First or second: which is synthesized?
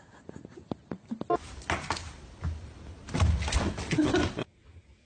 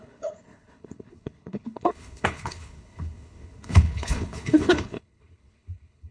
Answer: second